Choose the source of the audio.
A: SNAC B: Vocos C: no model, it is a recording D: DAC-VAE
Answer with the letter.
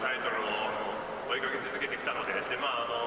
C